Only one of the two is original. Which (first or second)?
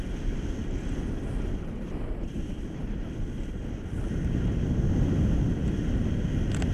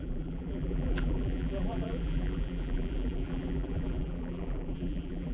first